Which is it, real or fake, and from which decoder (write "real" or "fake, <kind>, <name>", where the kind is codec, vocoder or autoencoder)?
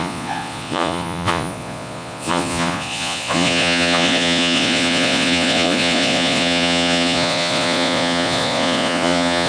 fake, vocoder, Vocos